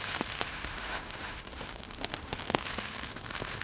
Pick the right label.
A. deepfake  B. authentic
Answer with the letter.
A